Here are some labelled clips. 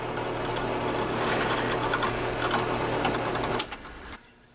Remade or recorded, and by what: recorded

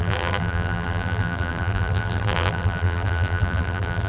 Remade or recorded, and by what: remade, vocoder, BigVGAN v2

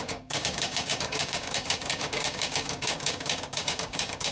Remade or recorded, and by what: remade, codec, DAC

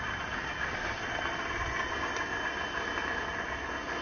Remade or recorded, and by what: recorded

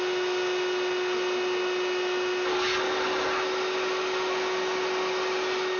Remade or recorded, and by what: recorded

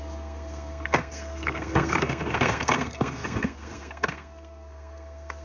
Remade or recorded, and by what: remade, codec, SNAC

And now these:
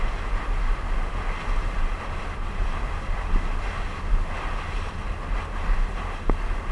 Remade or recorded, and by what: recorded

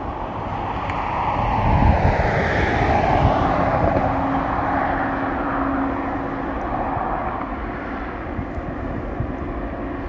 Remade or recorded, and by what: recorded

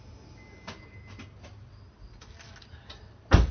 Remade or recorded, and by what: recorded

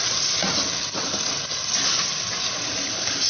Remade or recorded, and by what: recorded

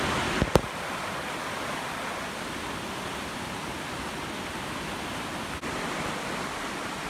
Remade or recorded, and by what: recorded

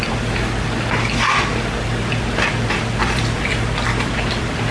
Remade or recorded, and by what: remade, vocoder, BigVGAN v2